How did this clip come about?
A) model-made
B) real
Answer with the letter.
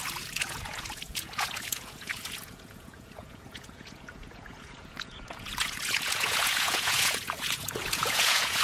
A